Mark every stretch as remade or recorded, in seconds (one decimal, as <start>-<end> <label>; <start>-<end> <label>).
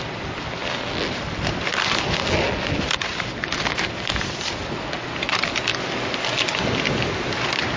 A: 0.0-7.8 recorded